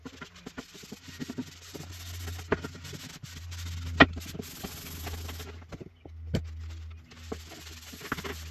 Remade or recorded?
recorded